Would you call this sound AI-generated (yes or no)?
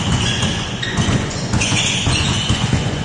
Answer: yes